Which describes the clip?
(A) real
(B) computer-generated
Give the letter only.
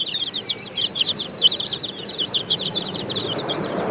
B